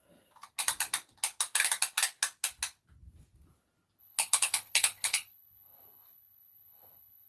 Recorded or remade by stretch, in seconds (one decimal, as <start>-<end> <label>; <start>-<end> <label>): 0.0-4.0 recorded; 4.0-7.3 remade